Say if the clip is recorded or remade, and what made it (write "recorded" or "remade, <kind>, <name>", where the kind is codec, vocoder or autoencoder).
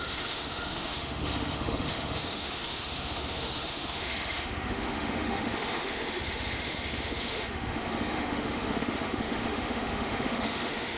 remade, autoencoder, DAC-VAE